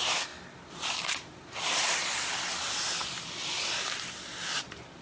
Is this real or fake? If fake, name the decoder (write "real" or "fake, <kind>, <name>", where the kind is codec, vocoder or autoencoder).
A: fake, vocoder, BigVGAN v2